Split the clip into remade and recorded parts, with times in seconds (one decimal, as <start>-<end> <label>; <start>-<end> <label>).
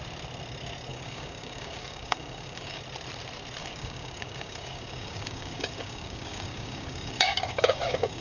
0.0-0.9 recorded; 0.9-2.8 remade; 2.8-3.6 recorded; 3.6-8.2 remade